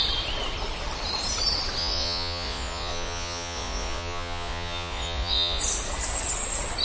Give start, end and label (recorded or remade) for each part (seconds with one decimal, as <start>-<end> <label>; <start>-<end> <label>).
0.0-1.8 recorded; 1.8-5.6 remade; 5.6-6.8 recorded